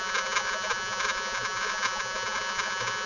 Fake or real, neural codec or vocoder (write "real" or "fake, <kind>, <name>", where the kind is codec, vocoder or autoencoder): fake, vocoder, Vocos